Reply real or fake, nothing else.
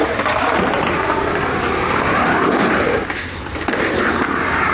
real